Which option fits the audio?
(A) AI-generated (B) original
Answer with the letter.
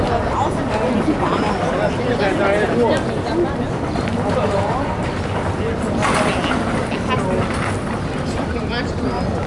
B